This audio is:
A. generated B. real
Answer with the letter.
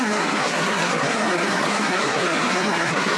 A